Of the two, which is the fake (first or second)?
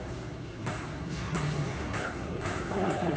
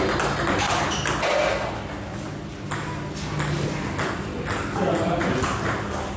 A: first